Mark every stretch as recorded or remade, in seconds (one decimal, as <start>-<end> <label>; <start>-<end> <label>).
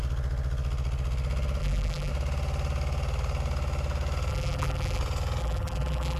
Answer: 0.0-1.6 recorded; 1.6-2.1 remade; 2.1-4.3 recorded; 4.3-5.0 remade; 5.0-5.4 recorded; 5.4-6.2 remade